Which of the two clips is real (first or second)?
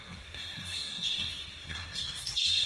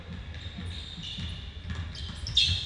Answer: second